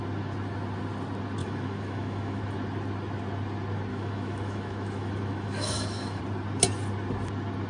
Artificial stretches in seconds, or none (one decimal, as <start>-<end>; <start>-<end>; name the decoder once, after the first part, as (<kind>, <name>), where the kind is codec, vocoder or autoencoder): 1.4-2.4 (autoencoder, DAC-VAE); 3.9-6.2